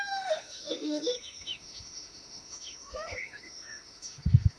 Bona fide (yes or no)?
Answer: no